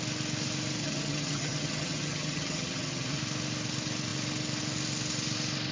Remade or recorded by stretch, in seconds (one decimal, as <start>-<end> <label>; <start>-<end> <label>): 0.0-0.8 recorded; 0.8-3.2 remade; 3.2-5.7 recorded